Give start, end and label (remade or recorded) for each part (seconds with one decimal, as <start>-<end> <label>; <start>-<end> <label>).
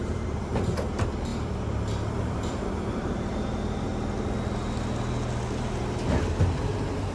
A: 0.0-1.3 remade; 1.3-2.1 recorded; 2.1-3.9 remade; 3.9-6.4 recorded; 6.4-7.1 remade